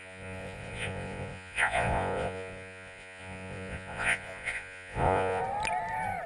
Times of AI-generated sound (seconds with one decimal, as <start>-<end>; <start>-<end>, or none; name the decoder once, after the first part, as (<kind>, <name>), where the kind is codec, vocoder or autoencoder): 0.0-5.4 (vocoder, Vocos)